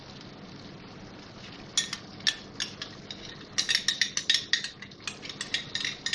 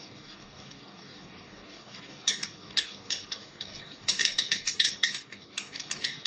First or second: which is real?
first